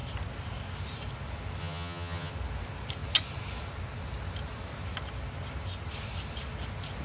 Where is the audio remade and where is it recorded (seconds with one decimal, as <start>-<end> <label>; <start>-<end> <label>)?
0.0-1.6 recorded; 1.6-2.3 remade; 2.3-7.0 recorded